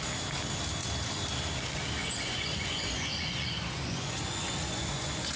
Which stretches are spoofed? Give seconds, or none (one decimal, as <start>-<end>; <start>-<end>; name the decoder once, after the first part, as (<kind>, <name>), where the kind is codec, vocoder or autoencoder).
2.0-5.4 (vocoder, Vocos)